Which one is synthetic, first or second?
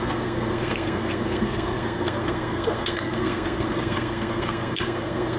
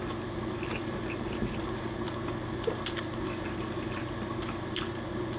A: first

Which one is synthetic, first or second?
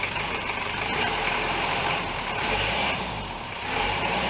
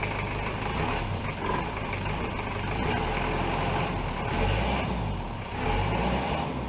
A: first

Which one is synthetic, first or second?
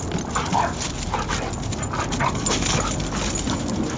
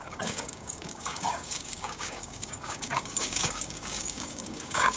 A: second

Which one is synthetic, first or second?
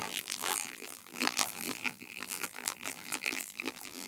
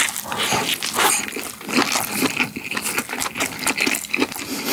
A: first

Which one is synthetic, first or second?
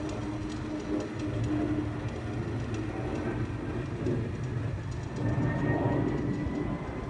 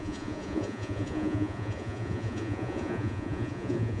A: second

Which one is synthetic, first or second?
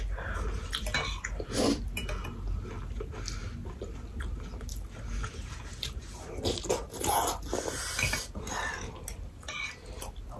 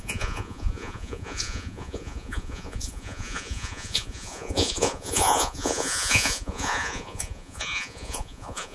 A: second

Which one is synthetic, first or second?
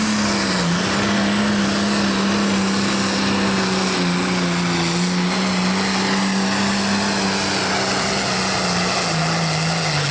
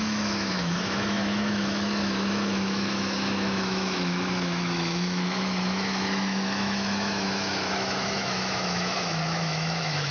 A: second